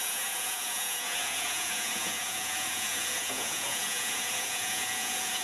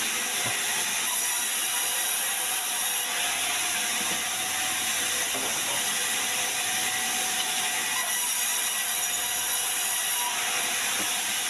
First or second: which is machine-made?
first